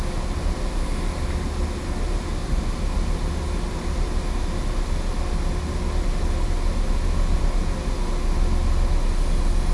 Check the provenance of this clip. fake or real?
real